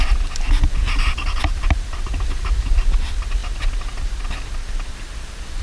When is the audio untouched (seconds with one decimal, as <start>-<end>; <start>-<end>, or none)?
0.0-5.6